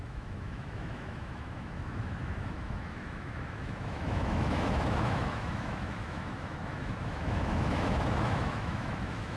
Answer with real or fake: fake